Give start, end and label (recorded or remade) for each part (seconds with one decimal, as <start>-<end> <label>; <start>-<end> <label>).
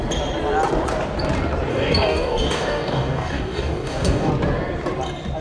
0.0-1.7 recorded; 1.7-4.3 remade; 4.3-5.4 recorded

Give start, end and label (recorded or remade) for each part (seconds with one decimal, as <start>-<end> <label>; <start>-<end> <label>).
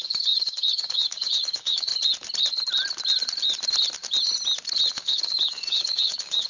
0.0-1.9 remade; 1.9-4.9 recorded; 4.9-6.5 remade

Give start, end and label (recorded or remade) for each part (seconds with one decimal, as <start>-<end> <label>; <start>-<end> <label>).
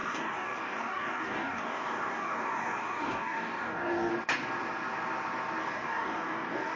0.0-4.1 remade; 4.1-5.6 recorded; 5.6-6.8 remade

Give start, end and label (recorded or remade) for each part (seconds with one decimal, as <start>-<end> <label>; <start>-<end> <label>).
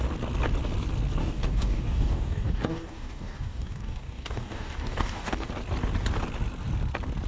0.0-1.2 recorded; 1.2-5.5 remade; 5.5-7.3 recorded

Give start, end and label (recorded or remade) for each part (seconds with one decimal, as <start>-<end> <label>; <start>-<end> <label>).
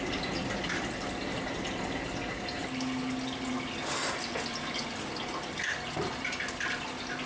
0.0-7.3 recorded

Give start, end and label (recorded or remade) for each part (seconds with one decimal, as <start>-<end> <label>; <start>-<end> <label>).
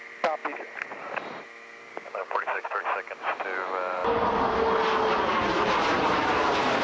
0.0-1.9 recorded; 1.9-2.8 remade; 2.8-6.8 recorded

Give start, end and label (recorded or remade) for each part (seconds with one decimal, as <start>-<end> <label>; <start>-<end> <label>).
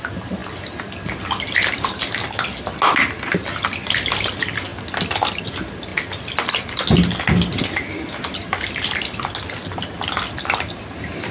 0.0-11.3 recorded